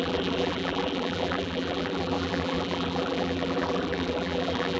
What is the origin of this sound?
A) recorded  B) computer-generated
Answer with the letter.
B